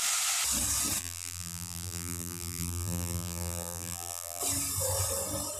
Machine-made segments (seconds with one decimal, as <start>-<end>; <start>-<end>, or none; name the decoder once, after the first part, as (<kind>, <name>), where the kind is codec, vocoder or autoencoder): 1.0-4.4 (vocoder, BigVGAN v2)